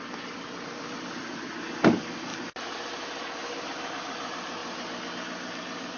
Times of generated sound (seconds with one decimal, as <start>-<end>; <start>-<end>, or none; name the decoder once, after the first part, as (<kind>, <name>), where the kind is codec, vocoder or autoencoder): none